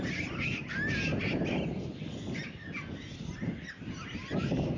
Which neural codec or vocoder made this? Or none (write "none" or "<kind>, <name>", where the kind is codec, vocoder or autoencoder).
none